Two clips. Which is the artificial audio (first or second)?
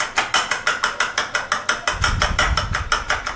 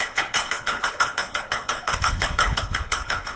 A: second